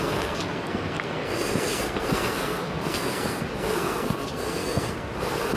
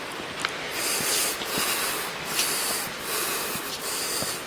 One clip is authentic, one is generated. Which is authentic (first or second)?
second